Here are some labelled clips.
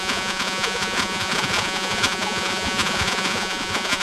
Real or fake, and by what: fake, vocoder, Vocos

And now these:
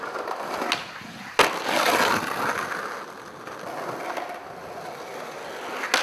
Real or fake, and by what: real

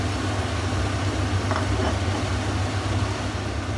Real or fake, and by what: real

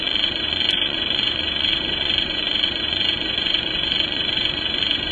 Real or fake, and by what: fake, vocoder, Vocos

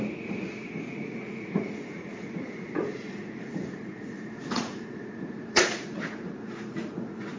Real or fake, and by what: fake, vocoder, Vocos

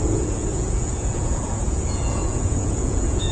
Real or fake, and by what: fake, vocoder, Vocos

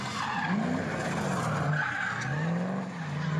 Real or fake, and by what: real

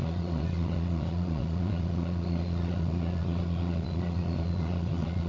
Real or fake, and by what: fake, vocoder, Vocos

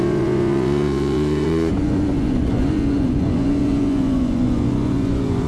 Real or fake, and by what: fake, vocoder, Vocos